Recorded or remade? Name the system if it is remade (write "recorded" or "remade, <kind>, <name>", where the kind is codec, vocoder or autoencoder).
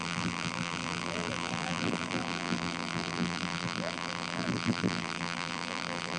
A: remade, vocoder, BigVGAN v2